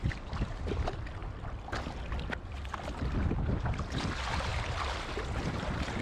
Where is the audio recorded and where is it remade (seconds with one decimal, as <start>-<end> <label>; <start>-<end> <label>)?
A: 0.0-6.0 recorded